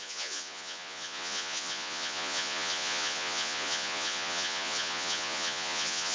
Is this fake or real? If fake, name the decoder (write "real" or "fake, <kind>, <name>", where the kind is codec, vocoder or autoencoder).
fake, vocoder, Vocos